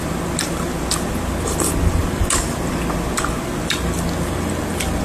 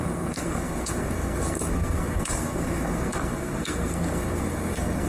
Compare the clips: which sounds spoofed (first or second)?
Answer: second